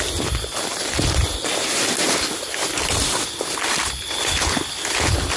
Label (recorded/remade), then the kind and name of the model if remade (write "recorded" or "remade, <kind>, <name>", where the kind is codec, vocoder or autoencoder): recorded